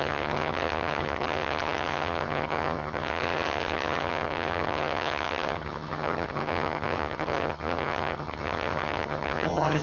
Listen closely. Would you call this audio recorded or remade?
remade